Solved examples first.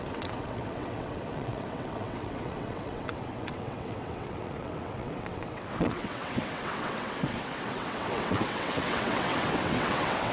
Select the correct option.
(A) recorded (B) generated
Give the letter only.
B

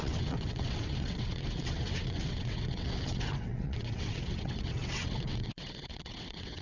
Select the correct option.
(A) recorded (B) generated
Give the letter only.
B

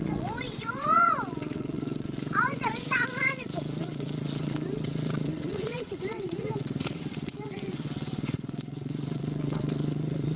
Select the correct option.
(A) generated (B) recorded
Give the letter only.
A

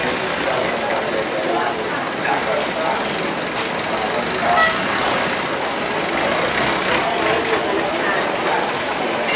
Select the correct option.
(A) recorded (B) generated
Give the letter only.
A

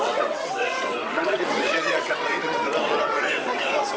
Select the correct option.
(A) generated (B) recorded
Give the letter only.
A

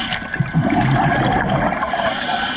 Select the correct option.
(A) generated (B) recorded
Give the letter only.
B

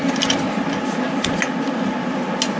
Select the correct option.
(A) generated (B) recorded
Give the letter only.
B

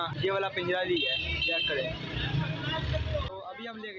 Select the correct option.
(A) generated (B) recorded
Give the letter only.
B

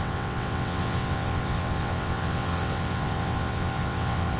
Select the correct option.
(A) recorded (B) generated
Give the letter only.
B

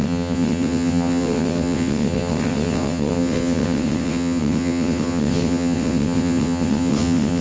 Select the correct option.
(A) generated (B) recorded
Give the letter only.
A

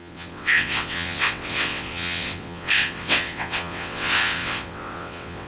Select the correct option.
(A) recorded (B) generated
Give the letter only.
B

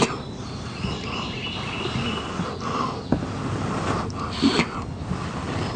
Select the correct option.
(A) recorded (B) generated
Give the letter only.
A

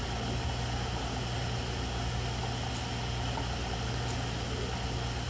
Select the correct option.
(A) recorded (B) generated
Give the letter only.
A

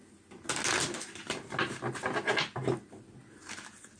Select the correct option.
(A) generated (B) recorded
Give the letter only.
B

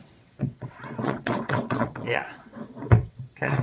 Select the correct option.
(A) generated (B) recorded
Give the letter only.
A